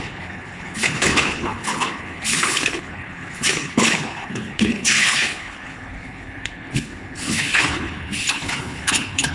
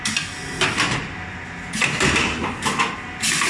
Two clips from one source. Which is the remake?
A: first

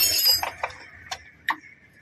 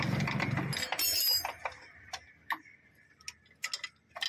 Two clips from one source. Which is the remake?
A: first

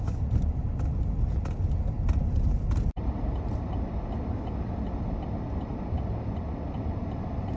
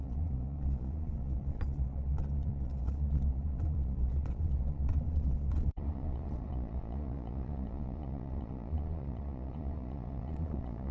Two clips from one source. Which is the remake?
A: second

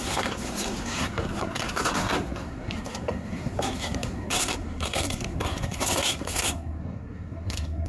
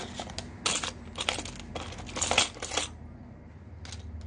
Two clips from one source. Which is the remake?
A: first